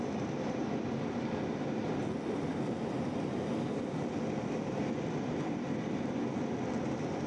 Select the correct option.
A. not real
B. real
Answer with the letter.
B